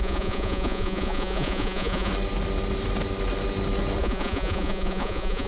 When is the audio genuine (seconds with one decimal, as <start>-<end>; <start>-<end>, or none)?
2.1-4.0